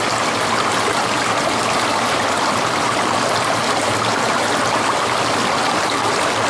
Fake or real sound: real